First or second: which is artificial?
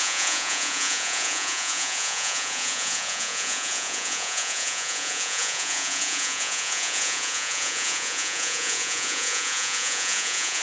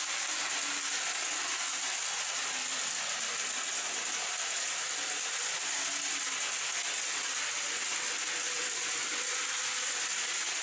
first